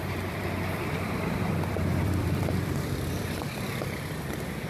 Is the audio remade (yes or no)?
yes